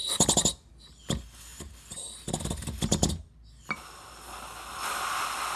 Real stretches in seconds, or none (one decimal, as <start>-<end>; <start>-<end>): 0.0-5.6